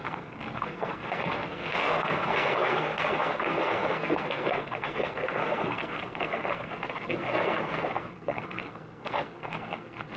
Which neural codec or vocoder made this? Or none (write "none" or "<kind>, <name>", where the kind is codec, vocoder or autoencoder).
codec, SNAC